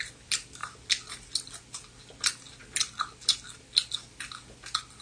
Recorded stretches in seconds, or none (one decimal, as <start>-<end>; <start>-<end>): 0.0-5.0